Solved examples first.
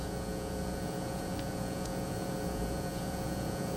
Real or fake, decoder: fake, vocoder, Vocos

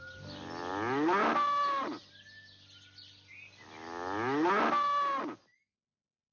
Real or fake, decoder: real